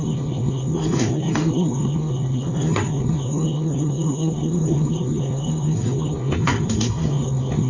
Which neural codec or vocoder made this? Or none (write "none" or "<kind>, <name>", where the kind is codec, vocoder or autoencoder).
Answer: codec, SNAC